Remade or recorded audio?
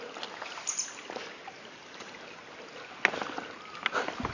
recorded